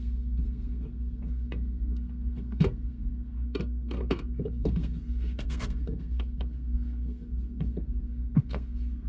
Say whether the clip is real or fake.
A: fake